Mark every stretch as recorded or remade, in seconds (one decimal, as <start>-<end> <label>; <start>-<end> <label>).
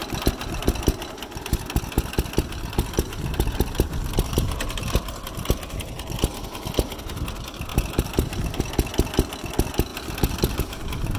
0.0-7.7 recorded; 7.7-8.6 remade; 8.6-11.2 recorded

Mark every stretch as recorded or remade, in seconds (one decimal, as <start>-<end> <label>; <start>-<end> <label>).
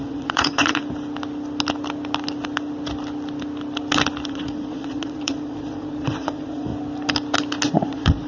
0.0-0.8 remade; 0.8-4.3 recorded; 4.3-6.7 remade; 6.7-7.7 recorded; 7.7-8.3 remade